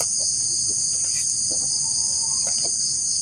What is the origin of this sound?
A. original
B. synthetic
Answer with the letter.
A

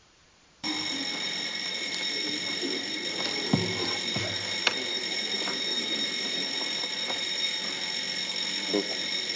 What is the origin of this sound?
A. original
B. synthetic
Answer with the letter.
B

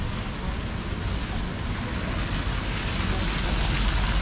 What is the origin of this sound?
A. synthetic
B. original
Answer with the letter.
B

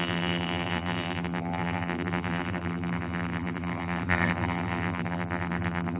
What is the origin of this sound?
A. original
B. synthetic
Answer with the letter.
B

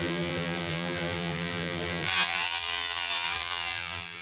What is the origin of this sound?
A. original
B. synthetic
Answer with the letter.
B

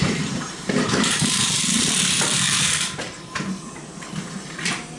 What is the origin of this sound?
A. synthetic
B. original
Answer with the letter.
A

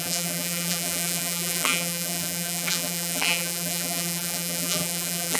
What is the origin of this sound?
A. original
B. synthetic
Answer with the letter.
B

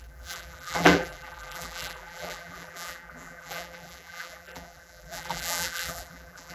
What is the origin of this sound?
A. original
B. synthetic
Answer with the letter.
B